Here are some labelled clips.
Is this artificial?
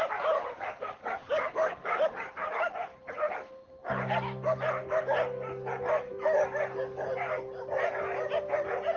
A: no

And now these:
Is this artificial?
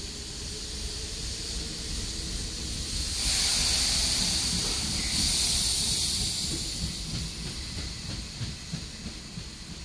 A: no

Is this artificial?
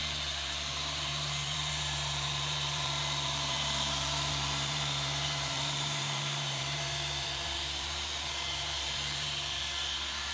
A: yes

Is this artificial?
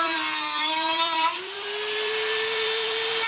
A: yes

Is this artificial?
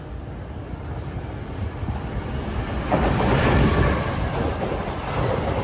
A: yes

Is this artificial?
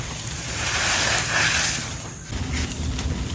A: no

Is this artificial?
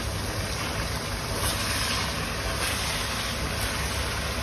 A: no